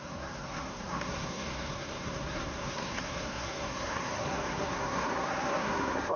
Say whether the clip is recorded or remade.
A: remade